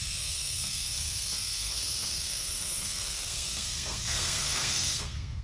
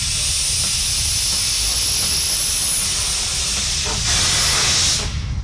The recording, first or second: second